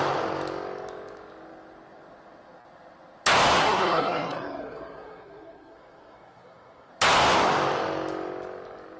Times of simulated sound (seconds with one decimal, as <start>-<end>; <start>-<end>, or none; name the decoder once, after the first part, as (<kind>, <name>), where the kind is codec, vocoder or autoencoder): 3.6-6.9 (codec, SNAC)